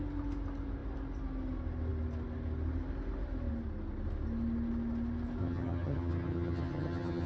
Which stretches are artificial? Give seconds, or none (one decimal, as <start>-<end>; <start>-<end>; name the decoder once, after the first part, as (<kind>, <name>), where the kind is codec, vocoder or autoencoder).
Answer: 5.4-7.3 (vocoder, HiFi-GAN)